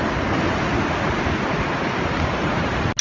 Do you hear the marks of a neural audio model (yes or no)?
no